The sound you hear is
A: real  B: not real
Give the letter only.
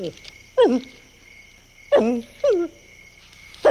A